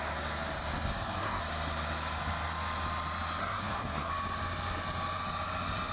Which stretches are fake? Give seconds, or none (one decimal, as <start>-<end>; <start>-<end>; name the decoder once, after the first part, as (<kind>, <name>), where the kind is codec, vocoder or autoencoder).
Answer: 0.9-1.4 (codec, SNAC); 3.4-4.1